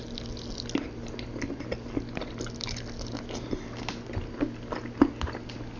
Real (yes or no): yes